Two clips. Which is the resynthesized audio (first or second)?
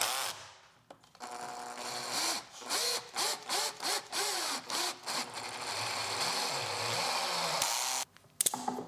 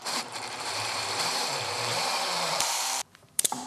second